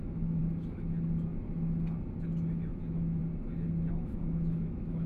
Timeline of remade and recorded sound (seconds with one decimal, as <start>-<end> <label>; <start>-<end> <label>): 0.0-0.4 remade; 0.4-2.7 recorded; 2.7-3.2 remade; 3.2-3.9 recorded; 3.9-5.1 remade